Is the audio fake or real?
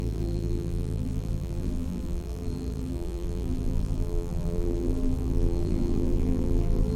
fake